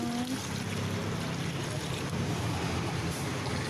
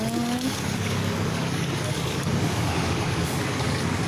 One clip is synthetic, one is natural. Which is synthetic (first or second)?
second